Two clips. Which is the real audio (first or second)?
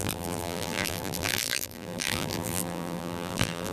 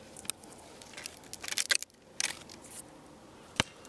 second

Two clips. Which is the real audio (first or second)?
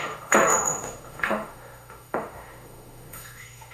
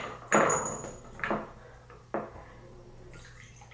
second